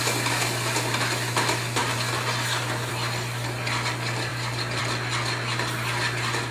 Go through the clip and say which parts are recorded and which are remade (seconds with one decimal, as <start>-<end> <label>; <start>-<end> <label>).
0.0-6.5 recorded